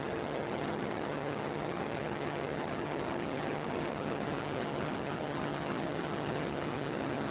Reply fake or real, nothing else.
fake